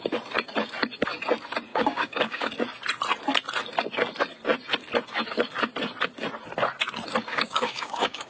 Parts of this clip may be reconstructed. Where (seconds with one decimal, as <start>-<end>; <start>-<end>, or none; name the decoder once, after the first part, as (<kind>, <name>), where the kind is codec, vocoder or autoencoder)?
1.7-2.5 (codec, DAC); 7.3-8.3